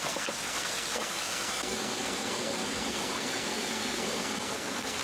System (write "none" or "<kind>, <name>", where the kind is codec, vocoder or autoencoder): codec, SNAC